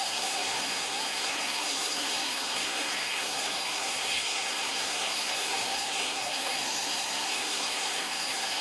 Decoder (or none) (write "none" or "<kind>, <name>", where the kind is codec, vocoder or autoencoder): codec, SNAC